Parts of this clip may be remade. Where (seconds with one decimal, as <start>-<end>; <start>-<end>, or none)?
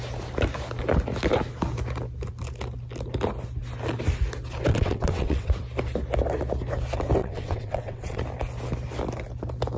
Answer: 4.7-5.5; 7.2-8.2